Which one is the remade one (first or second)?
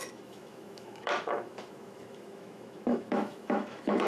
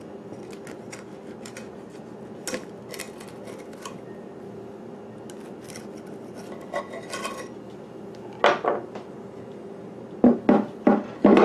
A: first